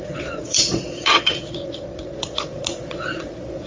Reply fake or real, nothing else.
fake